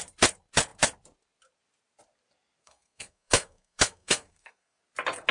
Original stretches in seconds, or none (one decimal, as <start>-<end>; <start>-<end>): 0.0-2.6; 4.8-5.3